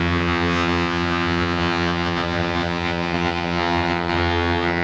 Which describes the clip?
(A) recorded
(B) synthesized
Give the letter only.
B